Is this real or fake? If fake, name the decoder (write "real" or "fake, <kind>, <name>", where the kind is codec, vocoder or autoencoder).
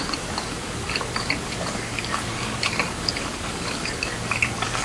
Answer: fake, codec, DAC